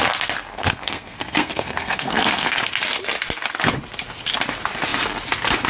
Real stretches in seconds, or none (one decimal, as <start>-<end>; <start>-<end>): 0.0-0.5; 2.6-5.7